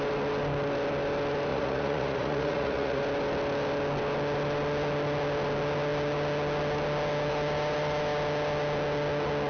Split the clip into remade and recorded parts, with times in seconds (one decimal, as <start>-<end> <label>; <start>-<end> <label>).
0.0-1.5 recorded; 1.5-3.0 remade; 3.0-9.5 recorded

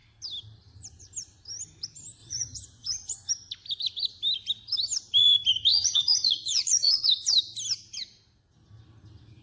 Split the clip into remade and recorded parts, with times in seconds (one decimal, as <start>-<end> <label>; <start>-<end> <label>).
0.0-2.2 recorded; 2.2-3.3 remade; 3.3-5.7 recorded; 5.7-7.3 remade; 7.3-9.4 recorded